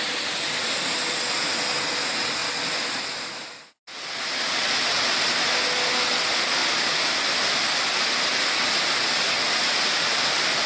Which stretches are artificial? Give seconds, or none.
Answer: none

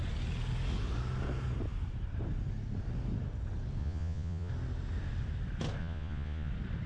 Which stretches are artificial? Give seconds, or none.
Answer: 3.8-4.5; 5.8-6.5

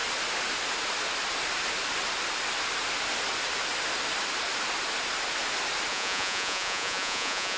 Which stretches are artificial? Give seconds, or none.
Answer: 5.9-7.6